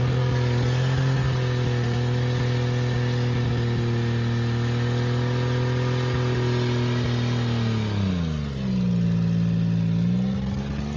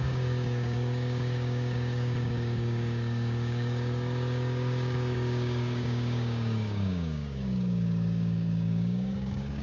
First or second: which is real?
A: first